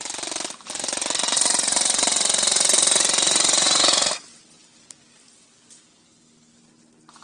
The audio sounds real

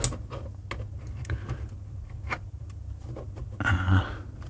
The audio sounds real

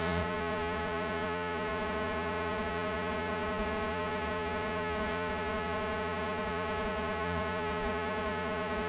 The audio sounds fake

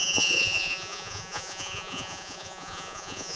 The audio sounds fake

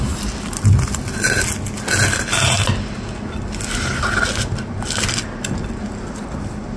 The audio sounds real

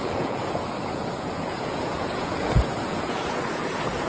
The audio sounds fake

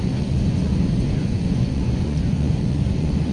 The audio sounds fake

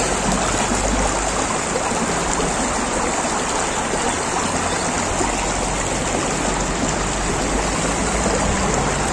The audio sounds real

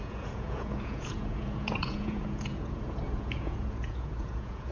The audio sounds fake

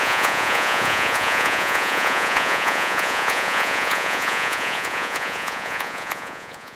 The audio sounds fake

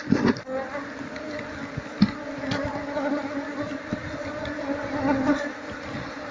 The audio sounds real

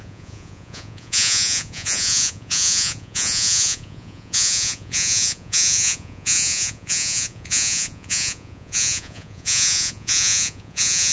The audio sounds fake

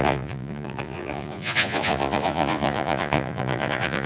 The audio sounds fake